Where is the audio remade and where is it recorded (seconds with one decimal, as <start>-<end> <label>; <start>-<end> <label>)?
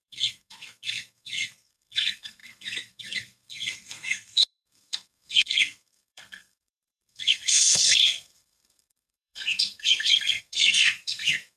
0.0-11.6 remade